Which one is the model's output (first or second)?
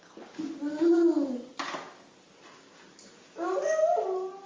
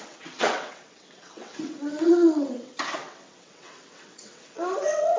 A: second